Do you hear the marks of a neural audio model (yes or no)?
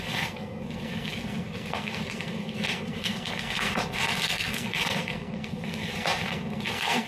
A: yes